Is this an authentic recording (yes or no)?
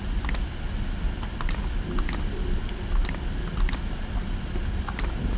yes